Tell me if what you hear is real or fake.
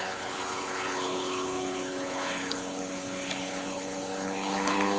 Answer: fake